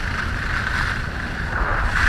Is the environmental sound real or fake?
real